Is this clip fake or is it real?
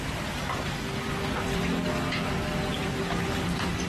real